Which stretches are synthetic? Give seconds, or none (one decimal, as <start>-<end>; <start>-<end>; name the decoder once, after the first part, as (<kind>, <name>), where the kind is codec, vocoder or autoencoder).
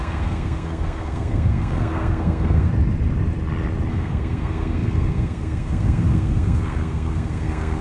0.0-2.7 (codec, SNAC); 3.9-7.8